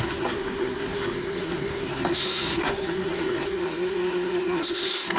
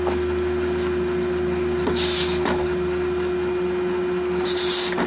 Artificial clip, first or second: first